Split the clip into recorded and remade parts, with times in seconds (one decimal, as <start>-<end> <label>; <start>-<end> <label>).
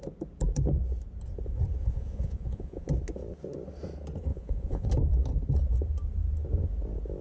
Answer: 0.0-1.8 recorded; 1.8-2.9 remade; 2.9-4.3 recorded; 4.3-4.9 remade; 4.9-7.2 recorded